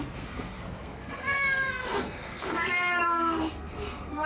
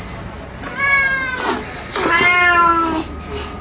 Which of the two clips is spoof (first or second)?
first